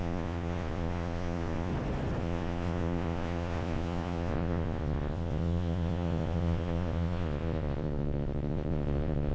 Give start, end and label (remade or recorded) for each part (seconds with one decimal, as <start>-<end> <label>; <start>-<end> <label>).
0.0-1.7 remade; 1.7-2.2 recorded; 2.2-9.3 remade